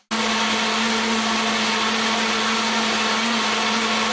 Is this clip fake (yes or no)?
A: no